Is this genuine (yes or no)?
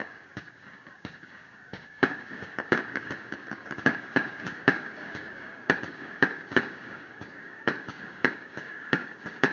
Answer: no